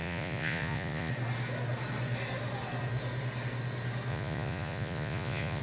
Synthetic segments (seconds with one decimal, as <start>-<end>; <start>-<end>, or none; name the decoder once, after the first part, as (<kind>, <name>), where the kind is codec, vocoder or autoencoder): 0.0-1.1 (vocoder, Vocos); 4.1-5.6